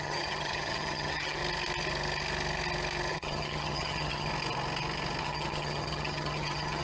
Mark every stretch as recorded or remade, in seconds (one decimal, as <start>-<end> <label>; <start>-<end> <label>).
0.0-1.4 remade; 1.4-3.1 recorded; 3.1-4.3 remade; 4.3-5.2 recorded; 5.2-6.8 remade